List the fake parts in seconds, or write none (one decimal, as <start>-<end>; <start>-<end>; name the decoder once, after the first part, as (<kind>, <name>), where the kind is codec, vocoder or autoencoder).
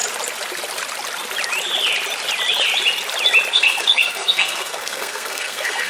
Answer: 3.5-5.9 (codec, SNAC)